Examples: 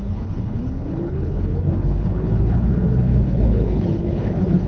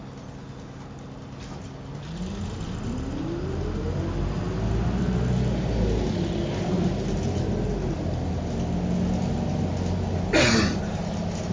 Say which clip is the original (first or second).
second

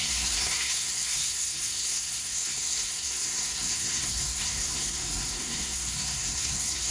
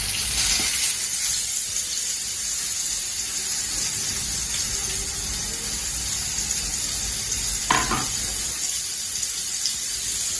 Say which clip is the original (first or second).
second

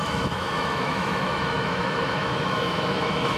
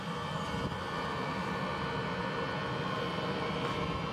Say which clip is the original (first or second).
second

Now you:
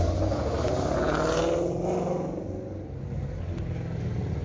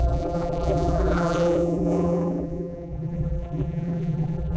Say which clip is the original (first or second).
first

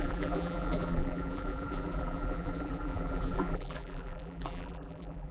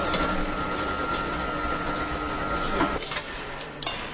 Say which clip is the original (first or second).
second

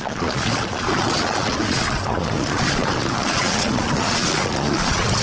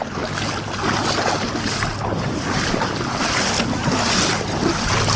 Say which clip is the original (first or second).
second